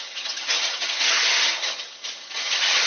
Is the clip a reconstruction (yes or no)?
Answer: yes